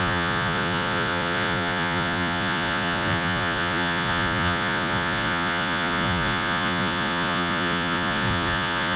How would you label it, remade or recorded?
remade